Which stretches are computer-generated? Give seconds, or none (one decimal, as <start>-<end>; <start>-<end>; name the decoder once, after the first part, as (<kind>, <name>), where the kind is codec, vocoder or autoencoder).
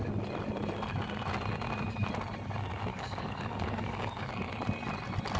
2.9-4.5 (codec, DAC)